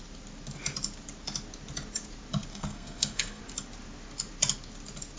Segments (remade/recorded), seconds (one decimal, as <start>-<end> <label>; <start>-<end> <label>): 0.0-2.5 recorded; 2.5-3.4 remade; 3.4-5.2 recorded